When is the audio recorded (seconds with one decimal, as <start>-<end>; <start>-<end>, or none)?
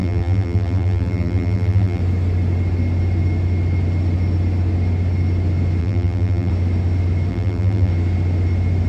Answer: 2.0-5.8; 6.5-7.3; 7.9-8.9